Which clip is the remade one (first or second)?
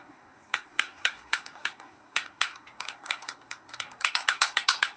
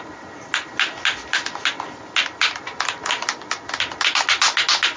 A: first